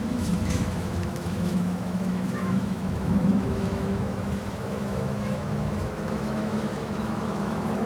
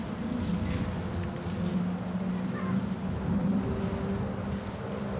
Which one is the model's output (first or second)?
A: first